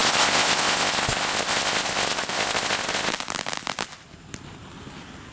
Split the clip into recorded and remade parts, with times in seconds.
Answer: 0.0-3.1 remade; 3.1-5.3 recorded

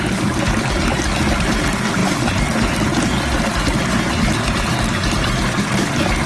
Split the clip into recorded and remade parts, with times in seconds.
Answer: 0.0-6.3 recorded

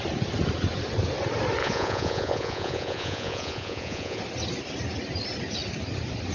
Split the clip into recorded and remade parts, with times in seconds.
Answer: 0.0-1.6 recorded; 1.6-4.2 remade; 4.2-6.3 recorded

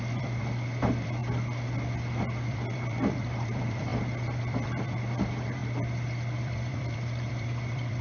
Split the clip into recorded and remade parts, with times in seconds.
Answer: 0.0-1.2 remade; 1.2-2.5 recorded; 2.5-5.6 remade; 5.6-6.4 recorded; 6.4-8.0 remade

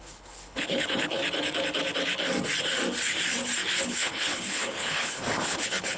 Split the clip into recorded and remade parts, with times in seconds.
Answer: 0.0-1.2 remade; 1.2-3.8 recorded; 3.8-6.0 remade

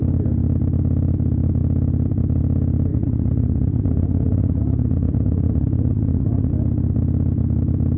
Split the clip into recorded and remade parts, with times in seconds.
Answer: 0.0-2.9 recorded; 2.9-6.5 remade; 6.5-8.0 recorded